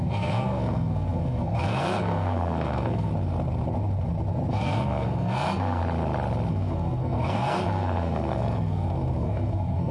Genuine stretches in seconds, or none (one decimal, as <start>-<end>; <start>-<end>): 3.1-4.5; 5.8-6.5